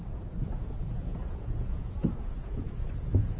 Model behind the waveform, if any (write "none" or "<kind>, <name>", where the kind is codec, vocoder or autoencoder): vocoder, Vocos